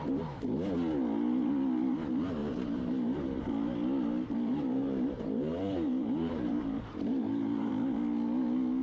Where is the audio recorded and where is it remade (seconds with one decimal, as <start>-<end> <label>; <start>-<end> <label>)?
0.0-2.4 recorded; 2.4-3.4 remade; 3.4-4.5 recorded; 4.5-7.7 remade; 7.7-8.8 recorded